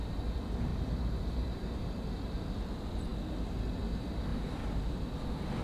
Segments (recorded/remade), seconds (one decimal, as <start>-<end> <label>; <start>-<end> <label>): 0.0-0.7 recorded; 0.7-2.0 remade; 2.0-5.6 recorded